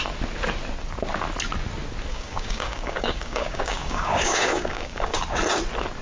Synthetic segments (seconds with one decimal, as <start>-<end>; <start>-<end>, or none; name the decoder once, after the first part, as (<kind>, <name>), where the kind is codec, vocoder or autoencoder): 2.1-5.2 (codec, DAC)